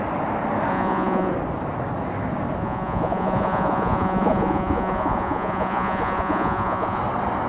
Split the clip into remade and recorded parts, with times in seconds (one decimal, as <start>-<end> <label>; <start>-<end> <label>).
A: 0.0-0.7 recorded; 0.7-1.3 remade; 1.3-2.6 recorded; 2.6-7.0 remade; 7.0-7.5 recorded